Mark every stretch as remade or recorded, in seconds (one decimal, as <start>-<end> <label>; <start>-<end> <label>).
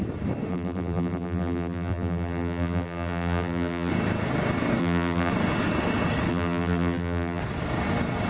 0.0-0.5 recorded; 0.5-3.9 remade; 3.9-4.8 recorded; 4.8-5.3 remade; 5.3-6.3 recorded; 6.3-7.4 remade; 7.4-8.3 recorded